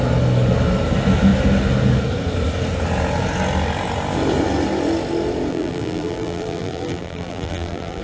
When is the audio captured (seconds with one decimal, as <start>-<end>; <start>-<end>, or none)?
0.0-5.5